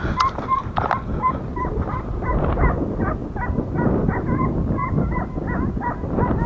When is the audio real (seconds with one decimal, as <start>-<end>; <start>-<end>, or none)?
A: 0.0-6.5